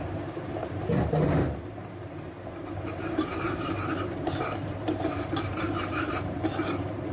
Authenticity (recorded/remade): remade